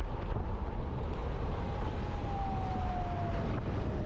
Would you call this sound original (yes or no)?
yes